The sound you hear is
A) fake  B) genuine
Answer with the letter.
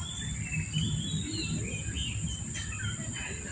B